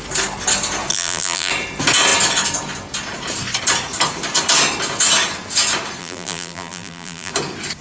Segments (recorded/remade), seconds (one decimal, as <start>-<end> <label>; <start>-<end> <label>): 0.0-0.9 recorded; 0.9-1.5 remade; 1.5-6.0 recorded; 6.0-7.3 remade; 7.3-7.8 recorded